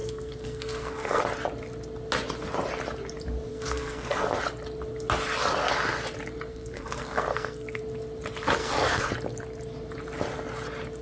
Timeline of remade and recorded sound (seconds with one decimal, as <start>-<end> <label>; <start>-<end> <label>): 0.0-1.2 remade; 1.2-3.5 recorded; 3.5-4.3 remade; 4.3-6.5 recorded; 6.5-7.8 remade; 7.8-8.6 recorded; 8.6-9.1 remade; 9.1-11.0 recorded